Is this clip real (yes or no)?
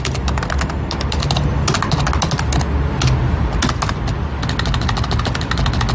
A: yes